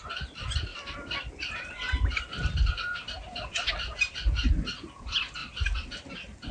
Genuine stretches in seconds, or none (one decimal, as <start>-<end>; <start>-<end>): 0.0-6.5